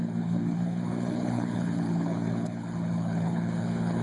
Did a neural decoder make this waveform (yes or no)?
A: yes